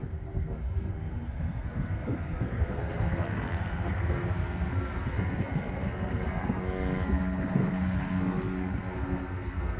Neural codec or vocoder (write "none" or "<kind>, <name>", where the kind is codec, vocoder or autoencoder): codec, SNAC